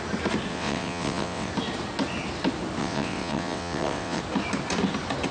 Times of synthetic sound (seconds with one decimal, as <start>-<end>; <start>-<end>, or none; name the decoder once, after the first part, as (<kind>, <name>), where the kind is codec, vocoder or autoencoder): 0.5-1.5 (vocoder, WaveNeXt); 2.8-4.2